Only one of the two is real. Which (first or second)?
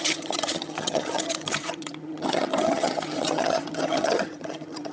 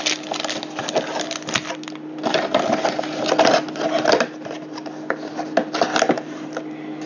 second